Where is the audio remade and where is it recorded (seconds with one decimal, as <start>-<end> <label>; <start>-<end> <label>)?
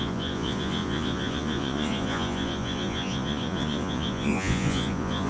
0.0-5.3 remade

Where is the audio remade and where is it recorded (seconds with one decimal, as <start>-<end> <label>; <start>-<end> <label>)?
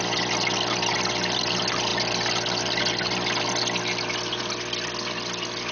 0.0-5.7 recorded